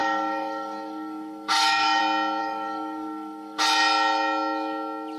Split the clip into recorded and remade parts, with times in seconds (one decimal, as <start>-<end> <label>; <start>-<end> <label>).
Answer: 0.0-2.0 remade; 2.0-2.4 recorded; 2.4-3.6 remade; 3.6-5.2 recorded